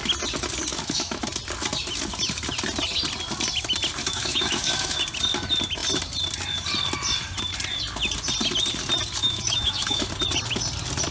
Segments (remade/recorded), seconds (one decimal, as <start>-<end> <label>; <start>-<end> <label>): 0.0-0.7 recorded; 0.7-1.2 remade; 1.2-4.0 recorded; 4.0-5.0 remade; 5.0-9.2 recorded; 9.2-10.1 remade; 10.1-11.1 recorded

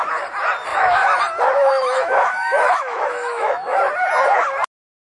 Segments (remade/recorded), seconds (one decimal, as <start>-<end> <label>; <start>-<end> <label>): 0.0-0.7 recorded; 0.7-1.2 remade; 1.2-1.6 recorded; 1.6-3.8 remade; 3.8-5.0 recorded

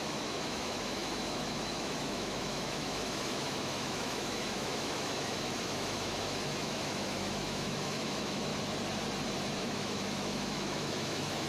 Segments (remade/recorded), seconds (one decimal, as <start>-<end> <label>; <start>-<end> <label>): 0.0-8.5 remade; 8.5-9.6 recorded; 9.6-11.5 remade

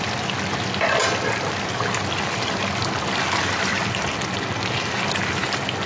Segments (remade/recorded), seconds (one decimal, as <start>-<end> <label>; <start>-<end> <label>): 0.0-5.9 recorded

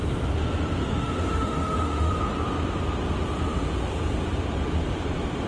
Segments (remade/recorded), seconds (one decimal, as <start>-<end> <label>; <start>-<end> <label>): 0.0-0.8 recorded; 0.8-2.1 remade; 2.1-5.5 recorded

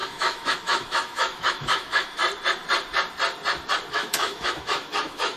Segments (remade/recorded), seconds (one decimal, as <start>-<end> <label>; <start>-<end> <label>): 0.0-2.2 remade; 2.2-3.9 recorded; 3.9-5.4 remade

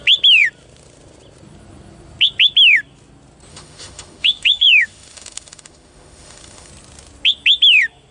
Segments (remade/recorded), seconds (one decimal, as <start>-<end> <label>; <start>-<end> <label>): 0.0-3.5 recorded; 3.5-6.7 remade; 6.7-8.1 recorded

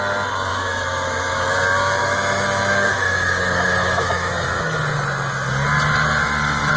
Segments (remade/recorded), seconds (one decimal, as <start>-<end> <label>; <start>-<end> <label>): 0.0-0.5 recorded; 0.5-1.5 remade; 1.5-2.0 recorded; 2.0-4.3 remade; 4.3-6.8 recorded